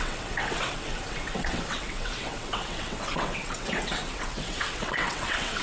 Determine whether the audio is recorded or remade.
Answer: remade